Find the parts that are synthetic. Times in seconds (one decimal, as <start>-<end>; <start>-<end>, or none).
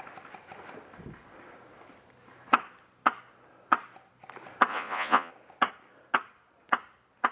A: 4.7-5.3